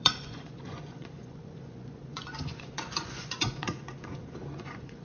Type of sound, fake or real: fake